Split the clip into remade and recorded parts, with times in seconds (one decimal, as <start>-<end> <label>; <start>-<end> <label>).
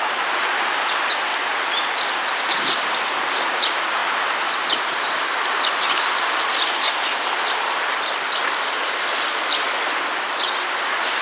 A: 0.0-11.2 recorded